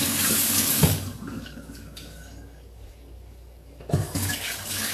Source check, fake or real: fake